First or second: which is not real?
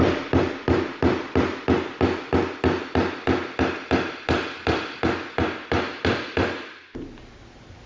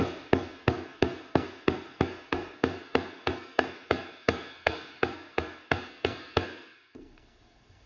second